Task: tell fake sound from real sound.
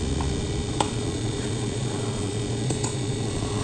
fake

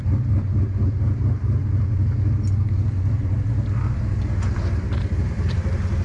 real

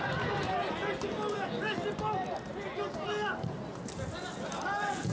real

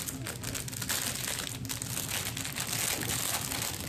real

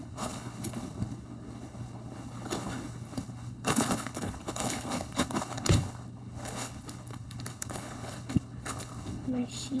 fake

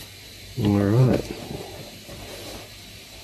fake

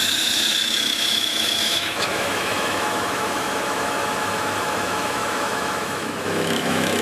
fake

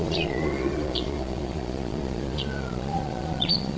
fake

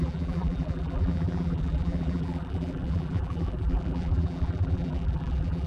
fake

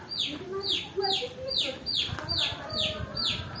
real